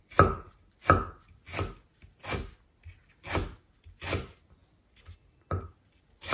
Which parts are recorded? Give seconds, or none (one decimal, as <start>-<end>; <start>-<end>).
0.0-6.3